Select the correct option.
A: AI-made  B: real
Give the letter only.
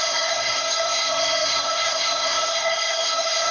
A